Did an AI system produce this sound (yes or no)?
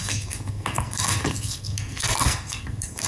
yes